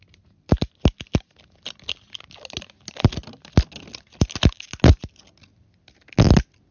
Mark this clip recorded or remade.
recorded